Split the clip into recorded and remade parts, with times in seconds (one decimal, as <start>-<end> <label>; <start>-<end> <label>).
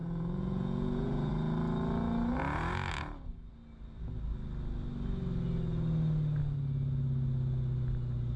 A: 0.0-1.3 remade; 1.3-8.4 recorded